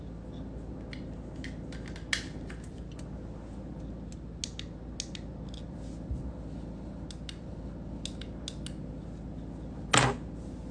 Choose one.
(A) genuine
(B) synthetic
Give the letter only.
A